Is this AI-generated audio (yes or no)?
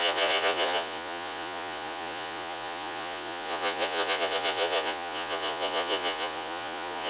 yes